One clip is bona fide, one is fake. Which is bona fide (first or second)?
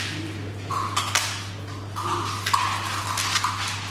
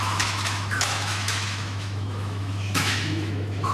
first